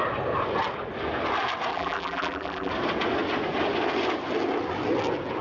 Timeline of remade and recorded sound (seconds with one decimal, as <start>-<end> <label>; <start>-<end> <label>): 0.0-1.7 recorded; 1.7-2.7 remade; 2.7-5.4 recorded